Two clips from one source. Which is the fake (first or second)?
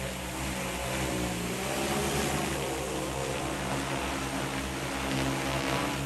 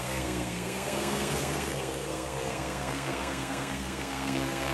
second